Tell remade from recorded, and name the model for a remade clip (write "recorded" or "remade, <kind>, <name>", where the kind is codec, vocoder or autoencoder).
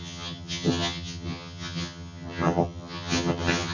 remade, vocoder, HiFi-GAN